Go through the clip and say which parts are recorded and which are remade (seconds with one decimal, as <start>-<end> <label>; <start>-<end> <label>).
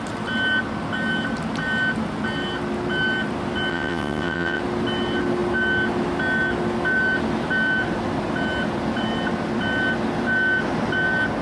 0.0-3.7 recorded; 3.7-4.6 remade; 4.6-11.4 recorded